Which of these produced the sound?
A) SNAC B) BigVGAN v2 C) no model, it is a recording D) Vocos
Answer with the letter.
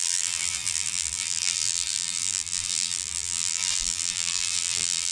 B